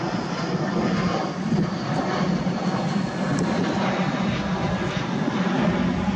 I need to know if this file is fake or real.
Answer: real